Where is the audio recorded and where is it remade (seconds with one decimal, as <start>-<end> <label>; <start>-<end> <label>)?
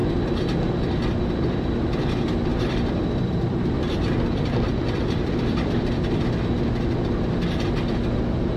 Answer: 0.0-2.5 recorded; 2.5-6.3 remade; 6.3-8.6 recorded